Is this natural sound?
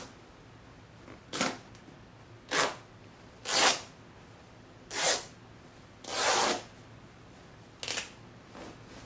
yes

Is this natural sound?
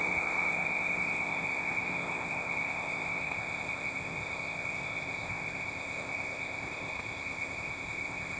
no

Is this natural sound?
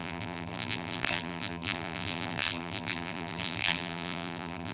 no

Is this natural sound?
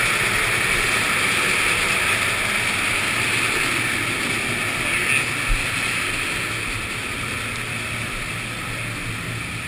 yes